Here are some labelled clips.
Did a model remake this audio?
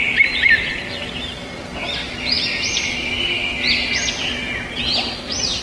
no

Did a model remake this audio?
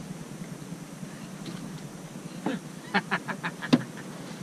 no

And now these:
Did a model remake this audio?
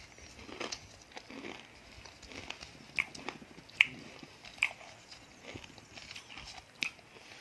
no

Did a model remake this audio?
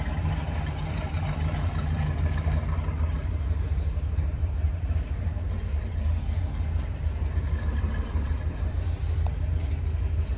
yes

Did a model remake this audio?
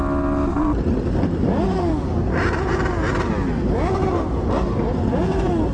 no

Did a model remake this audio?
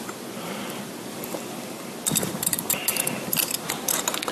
no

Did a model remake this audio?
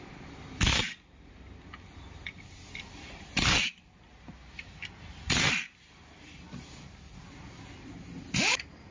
no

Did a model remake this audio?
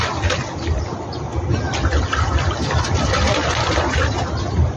no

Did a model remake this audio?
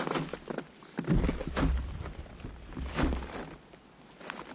yes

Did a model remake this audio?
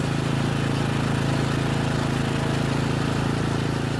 no